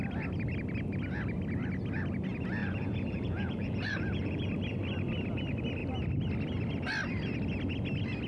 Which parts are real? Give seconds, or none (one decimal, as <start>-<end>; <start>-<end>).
0.0-2.6; 4.5-8.3